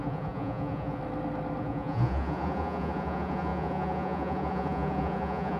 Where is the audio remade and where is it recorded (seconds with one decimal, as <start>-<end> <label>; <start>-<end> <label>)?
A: 0.0-1.0 remade; 1.0-1.6 recorded; 1.6-5.6 remade